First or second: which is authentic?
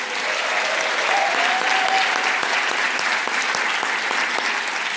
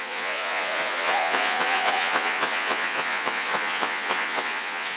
first